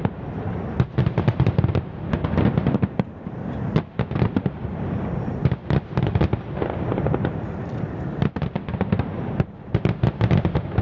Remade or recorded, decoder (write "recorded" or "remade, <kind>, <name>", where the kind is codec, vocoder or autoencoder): remade, vocoder, BigVGAN v2